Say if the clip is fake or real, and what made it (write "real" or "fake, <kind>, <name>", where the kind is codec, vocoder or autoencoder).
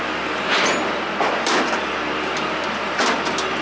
real